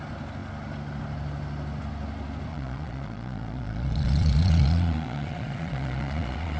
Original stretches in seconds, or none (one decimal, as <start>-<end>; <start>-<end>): 0.0-2.5